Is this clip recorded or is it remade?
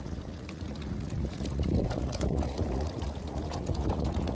remade